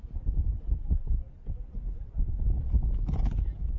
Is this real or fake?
real